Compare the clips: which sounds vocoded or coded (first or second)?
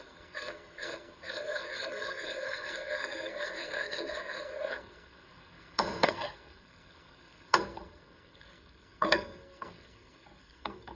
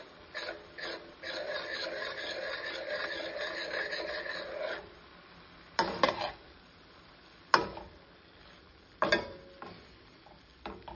first